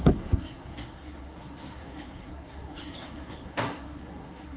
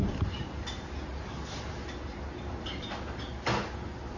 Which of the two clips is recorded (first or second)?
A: second